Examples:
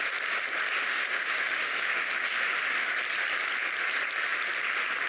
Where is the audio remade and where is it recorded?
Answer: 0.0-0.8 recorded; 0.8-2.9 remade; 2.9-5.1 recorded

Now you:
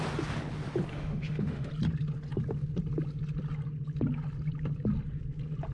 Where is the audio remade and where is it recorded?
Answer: 0.0-0.9 recorded; 0.9-1.7 remade; 1.7-5.7 recorded